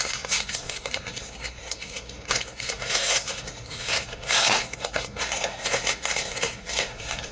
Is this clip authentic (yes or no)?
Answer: no